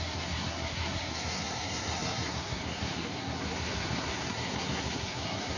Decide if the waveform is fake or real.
fake